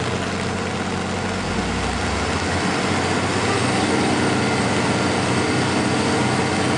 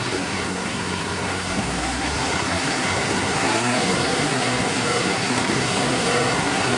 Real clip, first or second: first